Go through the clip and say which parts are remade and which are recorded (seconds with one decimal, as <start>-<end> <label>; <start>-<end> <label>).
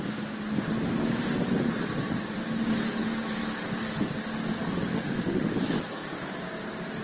0.0-4.9 recorded; 4.9-5.5 remade; 5.5-7.0 recorded